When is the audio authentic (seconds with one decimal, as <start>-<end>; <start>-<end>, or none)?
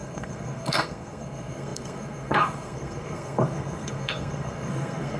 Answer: none